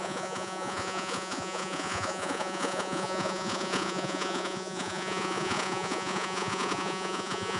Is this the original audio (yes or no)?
no